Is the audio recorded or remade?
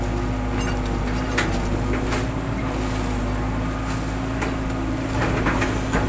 recorded